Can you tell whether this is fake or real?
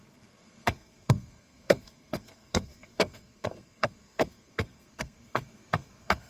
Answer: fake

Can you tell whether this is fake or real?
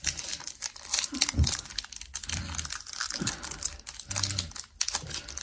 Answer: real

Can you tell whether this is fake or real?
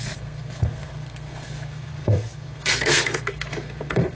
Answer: fake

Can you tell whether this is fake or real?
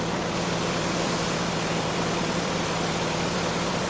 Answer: fake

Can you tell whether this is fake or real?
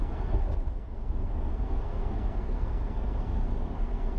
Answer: fake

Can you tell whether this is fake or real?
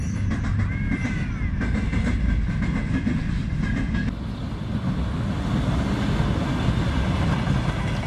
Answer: real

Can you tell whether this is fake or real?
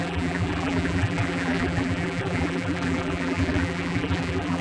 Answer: fake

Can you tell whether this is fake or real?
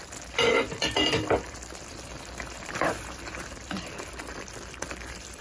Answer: fake